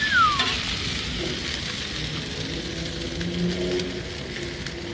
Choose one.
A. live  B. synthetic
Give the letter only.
A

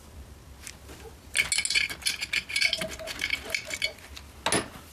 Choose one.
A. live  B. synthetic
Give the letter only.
A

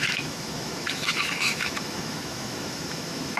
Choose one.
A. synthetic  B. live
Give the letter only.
A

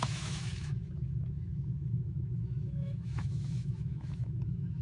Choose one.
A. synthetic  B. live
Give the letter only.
A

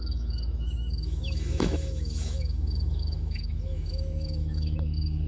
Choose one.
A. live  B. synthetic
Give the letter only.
B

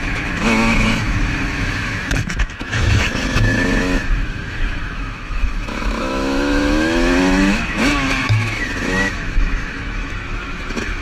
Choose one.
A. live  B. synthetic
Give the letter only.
B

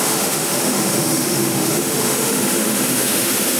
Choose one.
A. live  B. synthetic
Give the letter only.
B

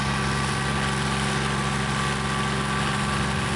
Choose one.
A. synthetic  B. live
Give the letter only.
B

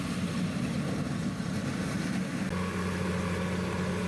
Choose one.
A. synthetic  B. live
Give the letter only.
B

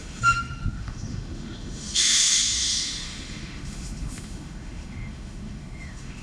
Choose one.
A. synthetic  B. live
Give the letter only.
A